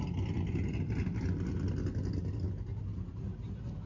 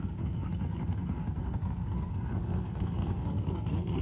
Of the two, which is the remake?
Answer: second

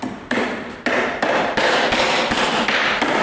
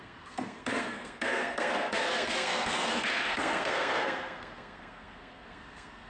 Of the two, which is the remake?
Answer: second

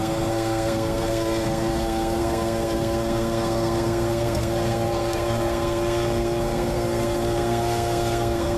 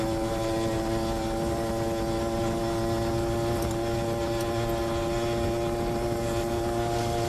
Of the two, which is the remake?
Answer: first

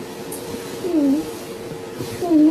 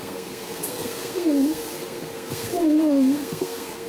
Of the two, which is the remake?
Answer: second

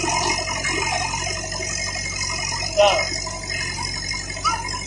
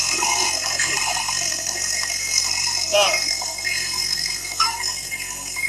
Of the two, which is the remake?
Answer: second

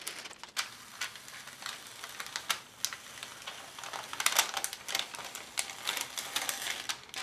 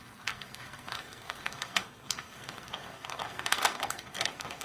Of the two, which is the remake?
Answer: second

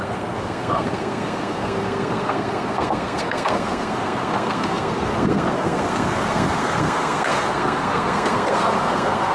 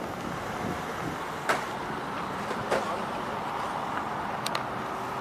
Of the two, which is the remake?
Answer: first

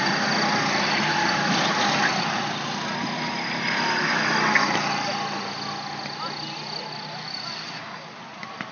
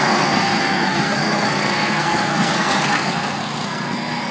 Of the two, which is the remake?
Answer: second